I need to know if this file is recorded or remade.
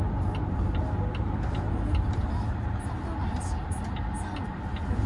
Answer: recorded